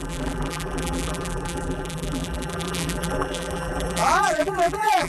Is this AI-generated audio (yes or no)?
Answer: yes